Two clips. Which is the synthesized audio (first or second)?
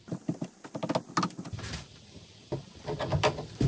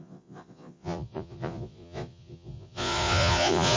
second